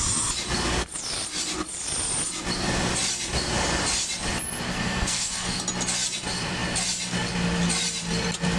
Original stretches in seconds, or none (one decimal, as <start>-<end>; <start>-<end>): 0.0-4.7; 5.6-8.6